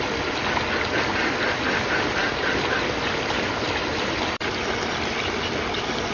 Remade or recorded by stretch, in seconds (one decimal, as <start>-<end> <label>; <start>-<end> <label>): 0.0-6.1 recorded